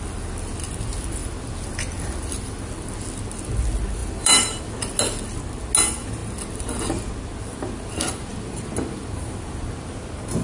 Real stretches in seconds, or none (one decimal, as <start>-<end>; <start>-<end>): 0.0-1.2; 2.7-4.0; 4.6-10.4